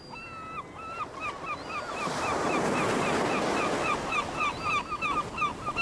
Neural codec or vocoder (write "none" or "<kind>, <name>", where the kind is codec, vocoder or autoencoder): none